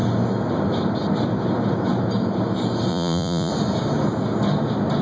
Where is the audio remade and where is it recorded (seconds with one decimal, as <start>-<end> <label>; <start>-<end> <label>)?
0.0-2.9 recorded; 2.9-3.5 remade; 3.5-5.0 recorded